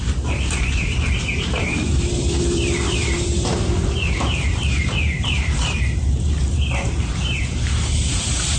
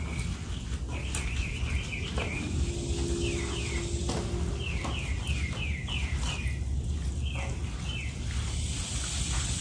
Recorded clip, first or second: second